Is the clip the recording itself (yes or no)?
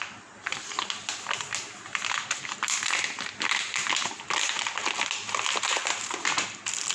yes